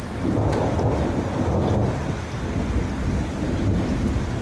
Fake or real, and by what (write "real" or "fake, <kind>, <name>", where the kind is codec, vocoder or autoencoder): real